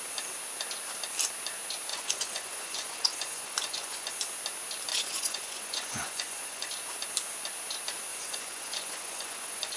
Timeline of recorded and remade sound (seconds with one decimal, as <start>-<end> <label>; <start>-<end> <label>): 0.0-1.9 recorded; 1.9-4.1 remade; 4.1-4.9 recorded; 4.9-6.7 remade; 6.7-8.1 recorded; 8.1-9.8 remade